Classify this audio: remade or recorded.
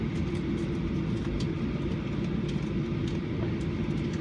recorded